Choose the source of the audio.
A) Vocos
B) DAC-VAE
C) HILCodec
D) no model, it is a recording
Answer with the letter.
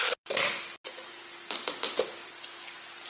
D